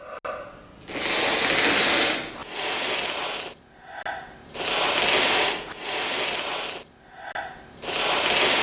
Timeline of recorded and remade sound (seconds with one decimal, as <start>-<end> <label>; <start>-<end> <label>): 0.0-8.6 recorded